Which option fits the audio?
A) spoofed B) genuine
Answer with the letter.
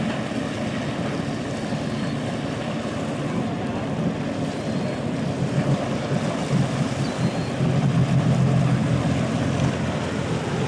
B